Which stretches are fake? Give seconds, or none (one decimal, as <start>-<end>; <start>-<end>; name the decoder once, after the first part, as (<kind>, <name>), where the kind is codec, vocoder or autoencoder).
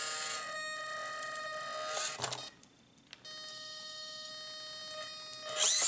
3.5-4.3 (autoencoder, DAC-VAE)